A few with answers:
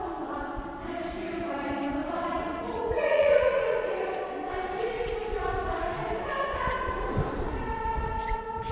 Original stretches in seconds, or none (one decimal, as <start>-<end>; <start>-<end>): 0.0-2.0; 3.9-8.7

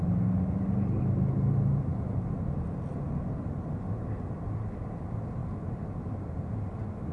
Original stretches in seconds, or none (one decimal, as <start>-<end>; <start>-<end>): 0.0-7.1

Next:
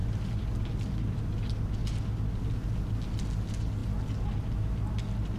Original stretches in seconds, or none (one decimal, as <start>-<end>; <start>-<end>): 0.0-5.4

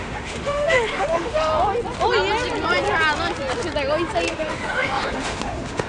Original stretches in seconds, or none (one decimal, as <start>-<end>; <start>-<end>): 1.5-4.3

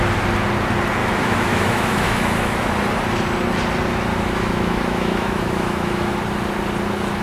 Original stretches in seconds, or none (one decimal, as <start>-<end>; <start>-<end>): 0.0-1.0; 2.7-4.1; 6.2-7.2